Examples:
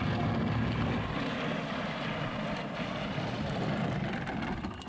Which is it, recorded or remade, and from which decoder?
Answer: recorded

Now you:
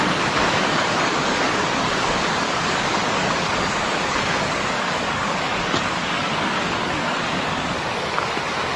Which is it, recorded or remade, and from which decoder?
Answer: remade, codec, DAC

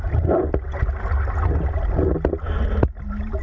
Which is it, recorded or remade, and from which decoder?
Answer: recorded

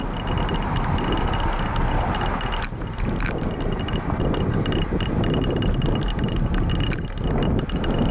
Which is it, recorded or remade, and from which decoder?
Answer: recorded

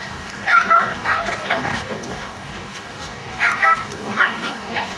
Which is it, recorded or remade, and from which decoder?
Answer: remade, codec, DAC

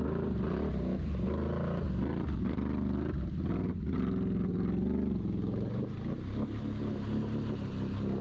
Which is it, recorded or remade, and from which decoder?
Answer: recorded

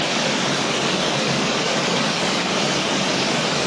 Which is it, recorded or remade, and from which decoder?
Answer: remade, codec, DAC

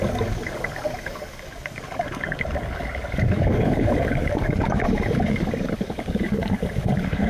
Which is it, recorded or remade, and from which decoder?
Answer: remade, codec, DAC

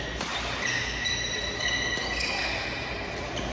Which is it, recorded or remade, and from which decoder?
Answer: recorded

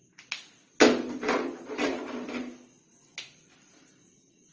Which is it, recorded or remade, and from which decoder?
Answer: recorded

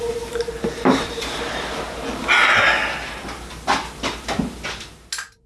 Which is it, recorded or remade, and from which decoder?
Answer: recorded